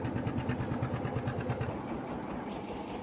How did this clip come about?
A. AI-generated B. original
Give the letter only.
B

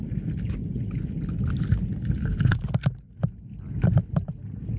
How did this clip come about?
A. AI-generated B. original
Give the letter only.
B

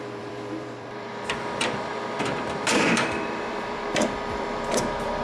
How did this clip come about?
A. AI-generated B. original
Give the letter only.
A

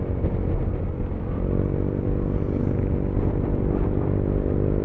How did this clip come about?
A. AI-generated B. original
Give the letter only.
A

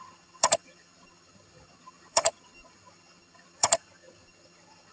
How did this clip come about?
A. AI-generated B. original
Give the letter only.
A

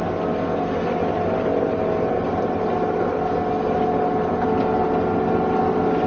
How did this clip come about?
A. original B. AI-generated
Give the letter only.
A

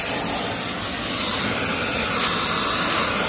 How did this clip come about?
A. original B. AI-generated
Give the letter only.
A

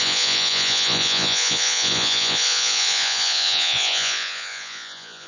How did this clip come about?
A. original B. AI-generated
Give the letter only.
B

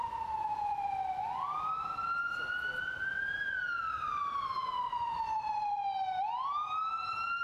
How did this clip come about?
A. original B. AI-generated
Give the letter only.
A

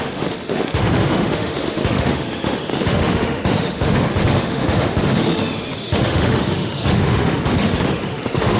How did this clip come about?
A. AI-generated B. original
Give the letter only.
A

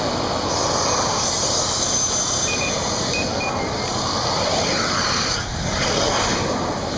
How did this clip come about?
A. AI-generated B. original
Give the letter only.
B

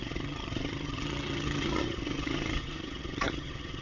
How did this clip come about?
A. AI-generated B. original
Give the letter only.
A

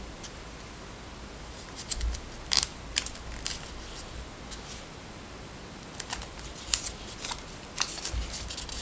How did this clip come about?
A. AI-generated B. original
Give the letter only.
B